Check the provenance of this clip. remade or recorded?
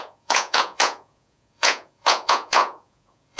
remade